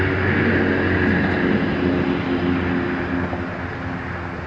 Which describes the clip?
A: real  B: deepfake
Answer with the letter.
A